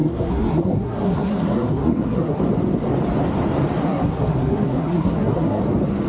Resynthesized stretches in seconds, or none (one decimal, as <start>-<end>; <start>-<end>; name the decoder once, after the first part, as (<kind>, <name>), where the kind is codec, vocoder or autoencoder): 0.0-2.4 (codec, SNAC); 3.8-5.6